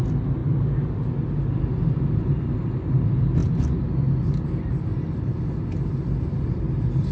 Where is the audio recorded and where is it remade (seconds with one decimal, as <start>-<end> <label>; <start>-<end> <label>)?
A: 0.0-7.1 recorded